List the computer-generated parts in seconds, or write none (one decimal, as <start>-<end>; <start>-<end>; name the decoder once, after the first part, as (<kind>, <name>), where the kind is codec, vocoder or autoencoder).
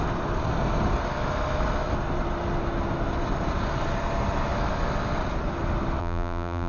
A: 6.0-6.7 (vocoder, BigVGAN v2)